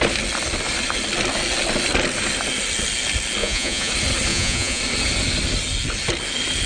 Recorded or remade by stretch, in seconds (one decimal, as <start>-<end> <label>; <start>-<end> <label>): 0.0-3.4 recorded; 3.4-3.9 remade; 3.9-4.3 recorded; 4.3-4.8 remade; 4.8-6.7 recorded